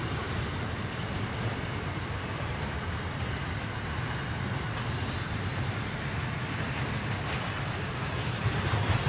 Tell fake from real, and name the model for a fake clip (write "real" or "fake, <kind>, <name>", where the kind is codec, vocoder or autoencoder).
real